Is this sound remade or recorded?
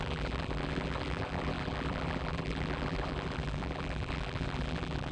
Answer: remade